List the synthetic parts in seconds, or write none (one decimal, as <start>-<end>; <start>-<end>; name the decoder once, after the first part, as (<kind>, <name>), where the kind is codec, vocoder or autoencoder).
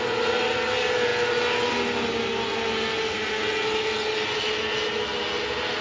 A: none